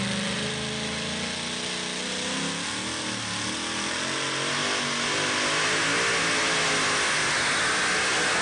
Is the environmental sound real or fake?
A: real